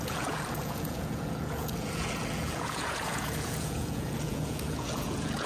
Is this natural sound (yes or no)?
no